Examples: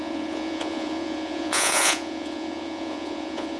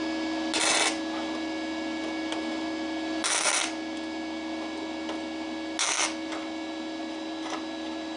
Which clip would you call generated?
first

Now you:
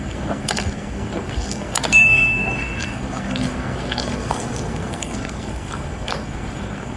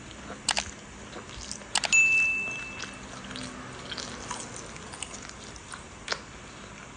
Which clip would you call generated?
first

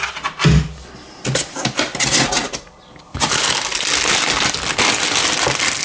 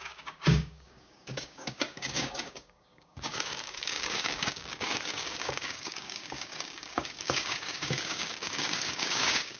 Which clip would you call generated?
second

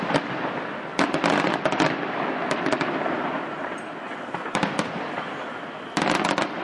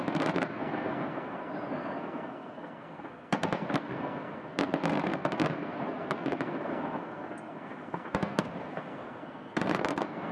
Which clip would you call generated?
second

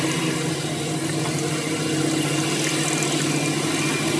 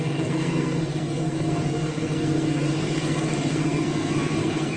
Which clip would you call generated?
second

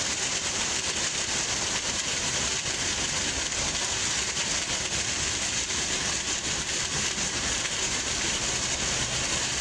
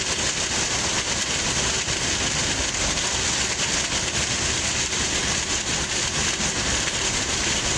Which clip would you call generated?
first